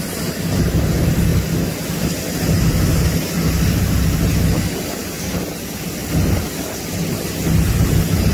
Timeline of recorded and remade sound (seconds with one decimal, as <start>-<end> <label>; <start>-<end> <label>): 0.0-8.3 recorded